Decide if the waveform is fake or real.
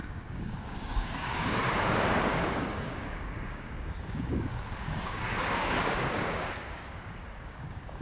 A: fake